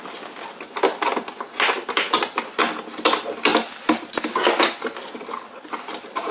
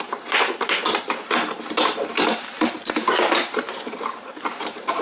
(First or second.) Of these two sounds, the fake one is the second